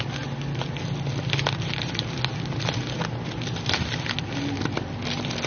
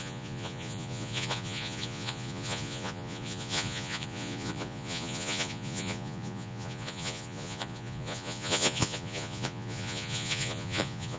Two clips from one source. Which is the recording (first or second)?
first